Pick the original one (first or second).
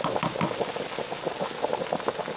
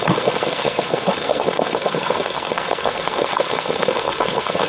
first